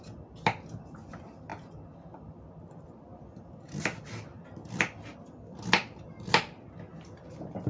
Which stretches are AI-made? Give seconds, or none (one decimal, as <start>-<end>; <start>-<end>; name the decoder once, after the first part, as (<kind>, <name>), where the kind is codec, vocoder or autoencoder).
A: none

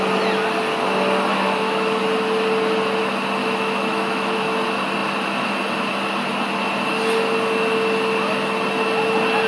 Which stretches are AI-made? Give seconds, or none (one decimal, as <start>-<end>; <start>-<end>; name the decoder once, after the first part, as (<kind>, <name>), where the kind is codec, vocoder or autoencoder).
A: 1.3-2.0 (autoencoder, DAC-VAE); 3.4-4.4

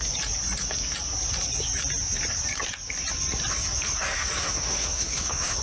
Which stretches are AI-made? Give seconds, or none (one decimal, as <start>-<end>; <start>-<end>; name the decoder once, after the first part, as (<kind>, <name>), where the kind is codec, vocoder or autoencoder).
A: 4.4-5.6 (autoencoder, DAC-VAE)

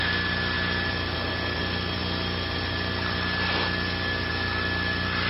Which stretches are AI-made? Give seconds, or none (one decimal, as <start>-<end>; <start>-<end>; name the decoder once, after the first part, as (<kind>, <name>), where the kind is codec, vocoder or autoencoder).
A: none

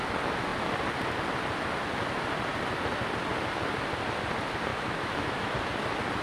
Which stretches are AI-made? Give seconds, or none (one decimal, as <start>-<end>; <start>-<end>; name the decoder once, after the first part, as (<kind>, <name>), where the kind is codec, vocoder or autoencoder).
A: 4.7-5.5 (autoencoder, DAC-VAE)